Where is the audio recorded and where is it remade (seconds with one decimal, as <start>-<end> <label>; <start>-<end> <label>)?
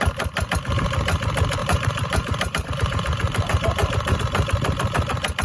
0.0-1.6 recorded; 1.6-4.2 remade; 4.2-5.4 recorded